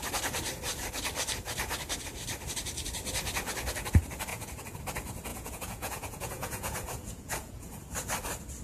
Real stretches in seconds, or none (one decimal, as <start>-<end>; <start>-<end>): 0.0-4.3; 4.8-5.3; 7.8-8.6